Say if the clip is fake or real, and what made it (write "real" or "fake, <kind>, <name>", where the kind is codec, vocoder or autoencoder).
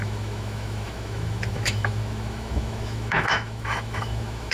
fake, autoencoder, DAC-VAE